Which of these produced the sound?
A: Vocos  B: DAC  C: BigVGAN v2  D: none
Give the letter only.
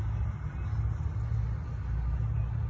D